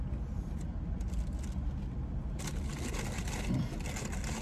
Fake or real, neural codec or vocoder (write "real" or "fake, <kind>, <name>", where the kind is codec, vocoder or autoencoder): real